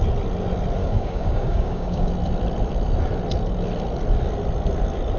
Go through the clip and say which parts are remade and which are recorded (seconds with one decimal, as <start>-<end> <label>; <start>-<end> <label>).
0.0-0.8 recorded; 0.8-2.1 remade; 2.1-5.2 recorded